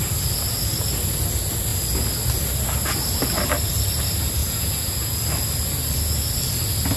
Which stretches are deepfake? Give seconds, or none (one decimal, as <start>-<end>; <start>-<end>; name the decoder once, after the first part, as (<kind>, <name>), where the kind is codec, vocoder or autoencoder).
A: 4.4-5.2 (vocoder, Vocos)